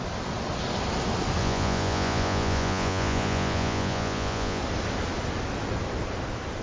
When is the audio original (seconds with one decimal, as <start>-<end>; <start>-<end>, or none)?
0.0-1.4; 4.6-6.6